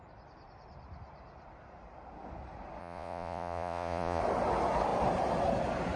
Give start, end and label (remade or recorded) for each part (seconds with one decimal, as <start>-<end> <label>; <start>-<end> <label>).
0.0-2.8 recorded; 2.8-4.2 remade; 4.2-6.0 recorded

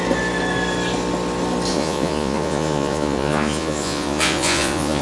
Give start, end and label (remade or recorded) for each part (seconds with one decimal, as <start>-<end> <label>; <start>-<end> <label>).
0.0-1.7 recorded; 1.7-5.0 remade